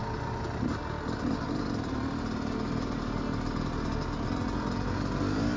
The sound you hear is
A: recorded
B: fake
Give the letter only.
A